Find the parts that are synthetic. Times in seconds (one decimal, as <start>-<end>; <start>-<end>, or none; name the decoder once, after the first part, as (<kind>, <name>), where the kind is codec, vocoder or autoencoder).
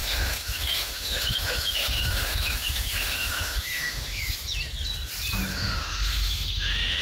0.0-4.2 (autoencoder, DAC-VAE); 5.5-7.0